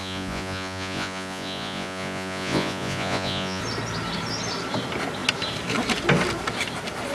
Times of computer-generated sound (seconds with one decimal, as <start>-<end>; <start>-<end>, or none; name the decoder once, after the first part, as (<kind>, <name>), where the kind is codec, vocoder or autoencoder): 0.0-3.6 (vocoder, Vocos)